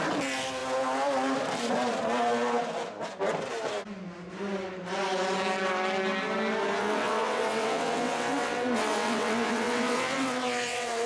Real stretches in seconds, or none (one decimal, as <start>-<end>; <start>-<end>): 0.0-6.8